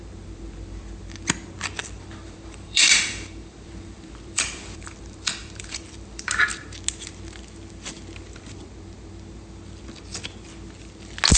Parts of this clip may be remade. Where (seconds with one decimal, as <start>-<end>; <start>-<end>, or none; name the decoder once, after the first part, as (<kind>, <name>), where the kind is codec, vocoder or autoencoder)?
1.8-6.3 (vocoder, BigVGAN v2)